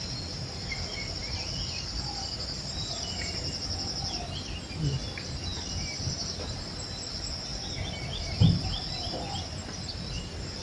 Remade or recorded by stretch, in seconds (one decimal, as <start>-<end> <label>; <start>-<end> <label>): 0.0-10.6 recorded